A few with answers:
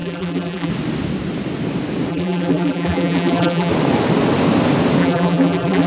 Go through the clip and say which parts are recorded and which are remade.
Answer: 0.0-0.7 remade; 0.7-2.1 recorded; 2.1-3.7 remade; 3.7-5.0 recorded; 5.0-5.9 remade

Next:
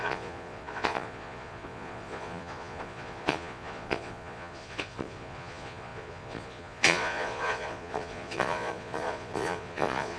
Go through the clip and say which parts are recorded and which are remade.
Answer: 0.0-10.2 remade

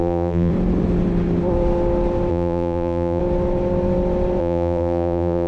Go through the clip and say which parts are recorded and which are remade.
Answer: 0.0-0.5 remade; 0.5-2.3 recorded; 2.3-3.2 remade; 3.2-4.4 recorded; 4.4-5.5 remade

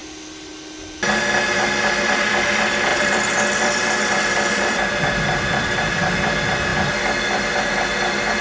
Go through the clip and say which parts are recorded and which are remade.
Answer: 0.0-0.5 remade; 0.5-2.9 recorded; 2.9-6.1 remade; 6.1-8.4 recorded

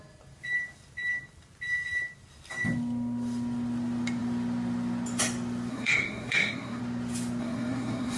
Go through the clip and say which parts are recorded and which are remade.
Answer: 0.0-5.7 recorded; 5.7-6.8 remade; 6.8-7.4 recorded; 7.4-8.2 remade